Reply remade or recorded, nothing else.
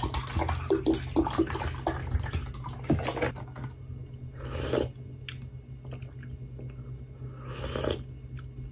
recorded